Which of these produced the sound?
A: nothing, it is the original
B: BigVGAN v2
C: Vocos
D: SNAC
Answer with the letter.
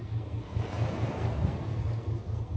D